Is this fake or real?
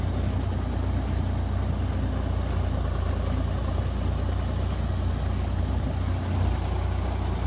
real